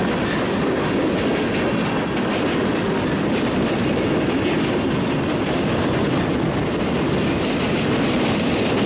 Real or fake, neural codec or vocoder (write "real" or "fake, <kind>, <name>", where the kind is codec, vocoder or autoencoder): real